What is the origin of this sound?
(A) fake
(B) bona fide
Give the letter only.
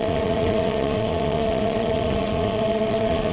A